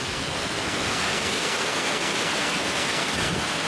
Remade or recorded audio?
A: remade